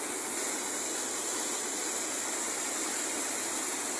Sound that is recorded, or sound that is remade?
recorded